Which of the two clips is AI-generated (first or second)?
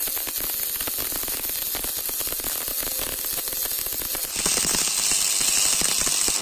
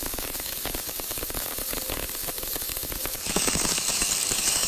second